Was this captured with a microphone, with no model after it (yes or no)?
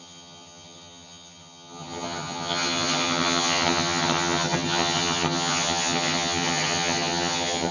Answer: no